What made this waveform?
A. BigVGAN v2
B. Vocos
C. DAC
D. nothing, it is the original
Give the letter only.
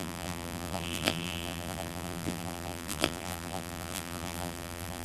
A